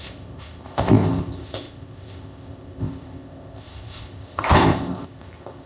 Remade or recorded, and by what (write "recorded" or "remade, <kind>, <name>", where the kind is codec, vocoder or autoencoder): remade, codec, ZipCodec